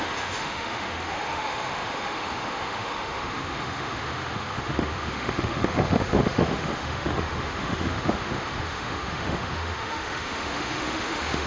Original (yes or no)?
no